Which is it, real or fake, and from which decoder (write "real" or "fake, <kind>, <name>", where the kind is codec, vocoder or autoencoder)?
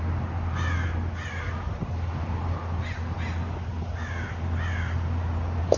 fake, vocoder, BigVGAN v2